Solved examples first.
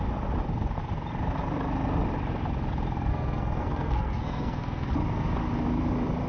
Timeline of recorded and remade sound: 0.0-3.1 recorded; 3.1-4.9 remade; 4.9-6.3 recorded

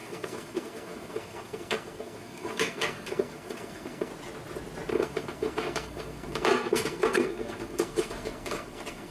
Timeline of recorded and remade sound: 0.0-4.1 remade; 4.1-4.9 recorded; 4.9-9.1 remade

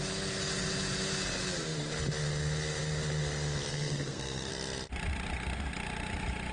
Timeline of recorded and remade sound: 0.0-3.7 recorded; 3.7-4.5 remade; 4.5-6.5 recorded

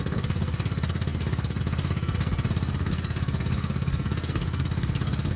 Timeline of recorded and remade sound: 0.0-5.4 remade

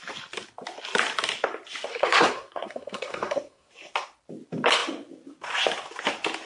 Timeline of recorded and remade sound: 0.0-1.9 recorded; 1.9-3.7 remade; 3.7-6.5 recorded

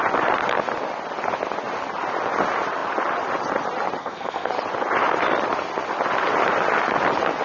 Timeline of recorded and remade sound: 0.0-4.0 recorded; 4.0-4.5 remade; 4.5-7.4 recorded